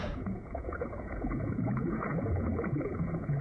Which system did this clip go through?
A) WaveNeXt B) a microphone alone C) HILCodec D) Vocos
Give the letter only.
D